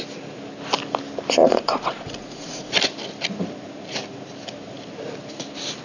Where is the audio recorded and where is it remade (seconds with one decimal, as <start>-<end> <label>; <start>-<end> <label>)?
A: 0.0-1.4 recorded; 1.4-2.7 remade; 2.7-5.8 recorded